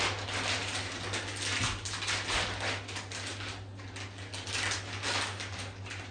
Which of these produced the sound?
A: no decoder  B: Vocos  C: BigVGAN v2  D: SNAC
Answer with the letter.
A